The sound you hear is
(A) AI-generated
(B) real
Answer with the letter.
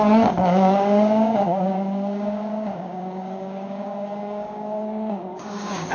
A